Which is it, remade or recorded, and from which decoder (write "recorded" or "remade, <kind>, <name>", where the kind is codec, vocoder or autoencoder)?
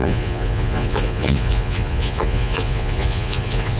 remade, vocoder, Vocos